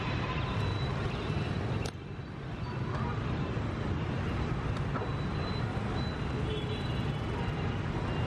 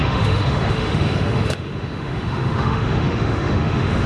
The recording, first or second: first